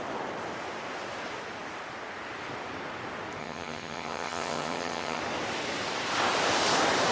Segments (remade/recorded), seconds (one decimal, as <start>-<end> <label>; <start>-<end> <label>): 0.0-3.4 recorded; 3.4-5.2 remade; 5.2-7.1 recorded